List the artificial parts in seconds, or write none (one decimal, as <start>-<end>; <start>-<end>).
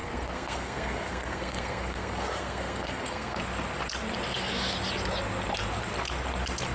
0.0-3.4